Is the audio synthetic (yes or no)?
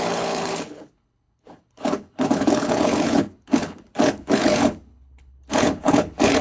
yes